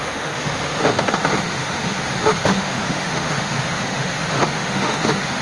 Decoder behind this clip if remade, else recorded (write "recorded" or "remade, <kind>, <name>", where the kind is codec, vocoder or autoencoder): remade, autoencoder, DAC-VAE